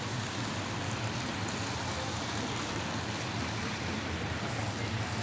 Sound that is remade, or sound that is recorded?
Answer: recorded